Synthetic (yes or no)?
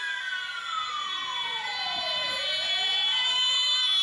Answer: no